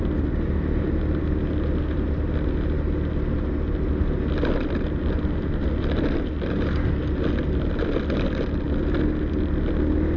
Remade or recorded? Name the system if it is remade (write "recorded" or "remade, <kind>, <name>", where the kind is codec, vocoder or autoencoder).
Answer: recorded